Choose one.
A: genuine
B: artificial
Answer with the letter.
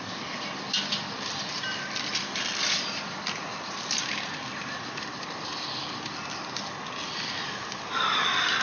A